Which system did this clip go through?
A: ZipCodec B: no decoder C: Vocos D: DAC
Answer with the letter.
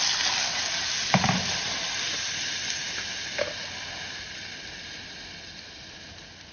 B